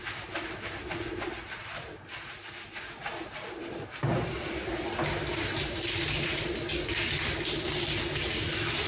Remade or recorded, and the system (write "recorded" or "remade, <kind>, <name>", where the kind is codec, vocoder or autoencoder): recorded